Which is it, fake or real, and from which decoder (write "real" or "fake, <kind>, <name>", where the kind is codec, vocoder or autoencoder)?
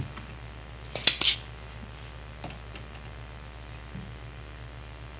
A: real